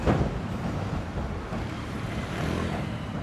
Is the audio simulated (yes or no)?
yes